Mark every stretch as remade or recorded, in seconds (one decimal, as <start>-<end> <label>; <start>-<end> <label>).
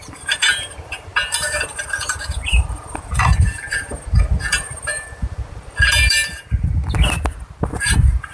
0.0-6.8 remade; 6.8-7.6 recorded; 7.6-8.3 remade